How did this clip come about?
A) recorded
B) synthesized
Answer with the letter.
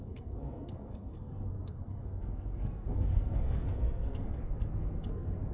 B